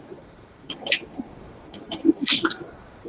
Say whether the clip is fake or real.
fake